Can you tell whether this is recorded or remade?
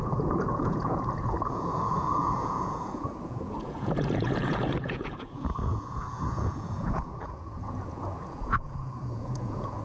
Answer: remade